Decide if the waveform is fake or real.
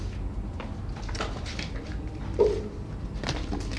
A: real